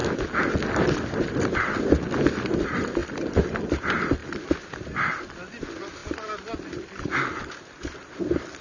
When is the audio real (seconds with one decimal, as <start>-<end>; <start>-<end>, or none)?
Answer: 0.0-1.2; 4.2-5.3; 6.0-7.5